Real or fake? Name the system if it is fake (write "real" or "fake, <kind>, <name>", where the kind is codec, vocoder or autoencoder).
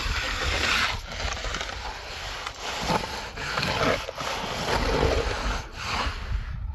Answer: real